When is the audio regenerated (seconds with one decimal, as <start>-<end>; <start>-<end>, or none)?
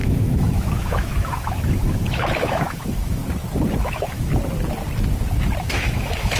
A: 0.0-3.2; 3.8-4.3; 5.6-6.4